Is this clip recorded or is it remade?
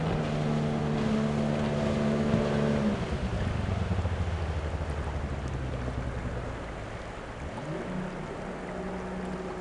recorded